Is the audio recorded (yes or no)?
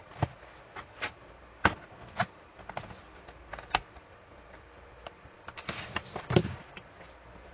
yes